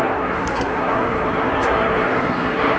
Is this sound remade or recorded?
remade